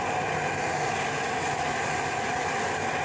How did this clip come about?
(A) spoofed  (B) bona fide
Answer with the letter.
B